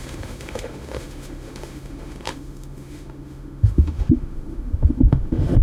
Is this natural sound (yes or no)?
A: no